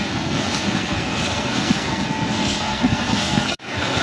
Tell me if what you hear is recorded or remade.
remade